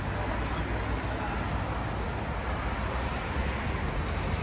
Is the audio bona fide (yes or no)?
yes